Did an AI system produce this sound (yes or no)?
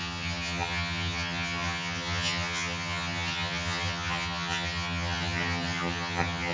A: yes